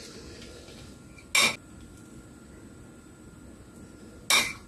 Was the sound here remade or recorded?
recorded